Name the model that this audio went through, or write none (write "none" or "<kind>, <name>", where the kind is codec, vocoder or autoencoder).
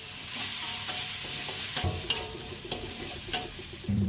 vocoder, BigVGAN v2